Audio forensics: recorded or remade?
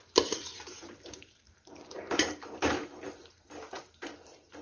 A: remade